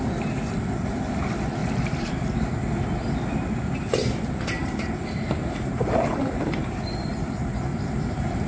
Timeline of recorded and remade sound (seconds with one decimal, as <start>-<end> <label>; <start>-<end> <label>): 0.0-1.6 recorded; 1.6-2.3 remade; 2.3-4.6 recorded; 4.6-7.1 remade; 7.1-7.7 recorded; 7.7-8.5 remade